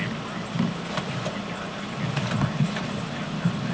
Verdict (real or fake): real